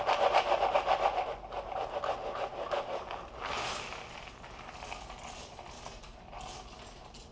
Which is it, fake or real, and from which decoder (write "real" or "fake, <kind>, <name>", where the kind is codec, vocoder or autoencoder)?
real